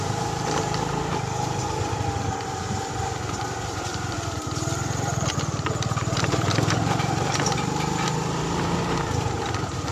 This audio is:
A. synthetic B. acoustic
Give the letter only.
A